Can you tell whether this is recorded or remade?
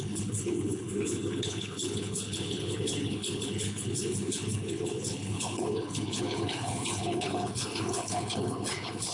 remade